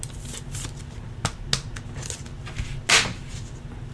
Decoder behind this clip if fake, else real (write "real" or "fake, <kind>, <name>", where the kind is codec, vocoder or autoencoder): real